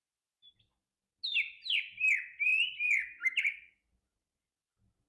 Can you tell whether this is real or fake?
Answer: real